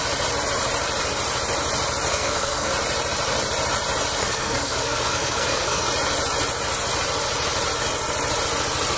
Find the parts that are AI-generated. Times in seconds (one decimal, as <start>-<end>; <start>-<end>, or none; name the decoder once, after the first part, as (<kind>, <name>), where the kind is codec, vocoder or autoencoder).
2.1-2.7 (codec, SNAC); 4.2-5.8